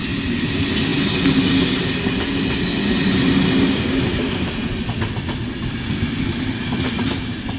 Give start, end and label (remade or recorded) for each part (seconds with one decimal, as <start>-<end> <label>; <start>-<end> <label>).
0.0-7.6 recorded